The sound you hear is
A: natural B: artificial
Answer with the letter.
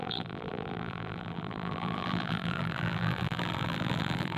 B